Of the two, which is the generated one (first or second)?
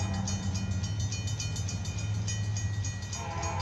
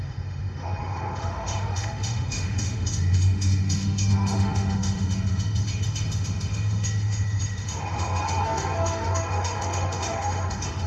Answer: second